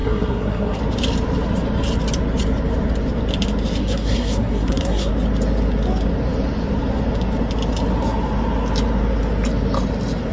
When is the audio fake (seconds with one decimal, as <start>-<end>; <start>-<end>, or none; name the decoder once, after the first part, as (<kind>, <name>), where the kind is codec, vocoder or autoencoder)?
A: 0.0-0.8 (codec, SNAC); 3.8-5.1